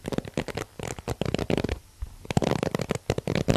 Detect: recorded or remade remade